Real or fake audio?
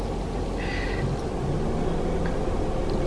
real